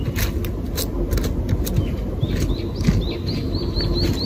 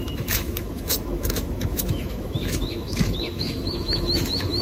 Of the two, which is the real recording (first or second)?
first